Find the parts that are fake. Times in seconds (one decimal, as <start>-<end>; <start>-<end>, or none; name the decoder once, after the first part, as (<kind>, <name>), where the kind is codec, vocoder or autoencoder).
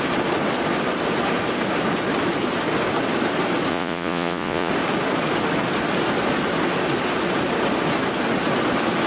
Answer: 3.7-4.7 (vocoder, Vocos)